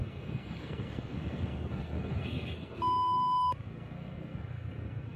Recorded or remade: remade